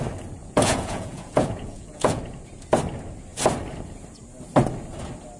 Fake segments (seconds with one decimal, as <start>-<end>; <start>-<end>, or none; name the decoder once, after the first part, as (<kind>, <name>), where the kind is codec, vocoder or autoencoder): 0.4-2.2 (vocoder, Vocos)